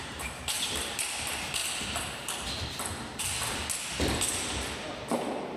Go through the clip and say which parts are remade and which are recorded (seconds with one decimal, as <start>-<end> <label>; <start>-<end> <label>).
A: 0.0-1.6 remade; 1.6-3.2 recorded; 3.2-3.6 remade; 3.6-5.6 recorded